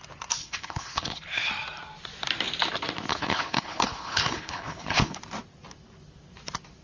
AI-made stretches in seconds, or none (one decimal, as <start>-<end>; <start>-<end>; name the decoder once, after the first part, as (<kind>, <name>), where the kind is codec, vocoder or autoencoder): 0.4-1.5 (codec, HILCodec); 3.1-5.2